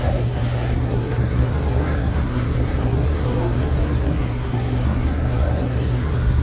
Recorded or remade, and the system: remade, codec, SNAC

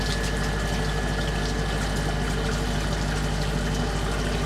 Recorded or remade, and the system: recorded